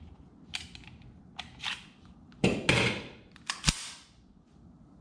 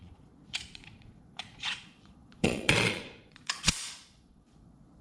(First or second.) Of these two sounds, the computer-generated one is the second